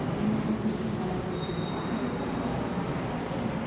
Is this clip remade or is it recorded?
recorded